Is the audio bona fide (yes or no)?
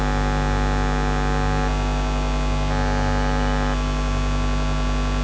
yes